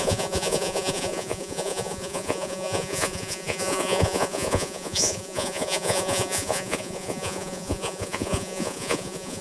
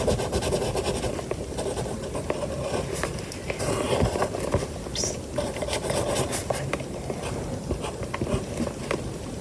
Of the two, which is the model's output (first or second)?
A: first